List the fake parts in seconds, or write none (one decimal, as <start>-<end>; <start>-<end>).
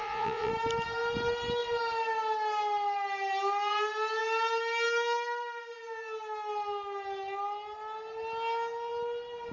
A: 0.0-0.5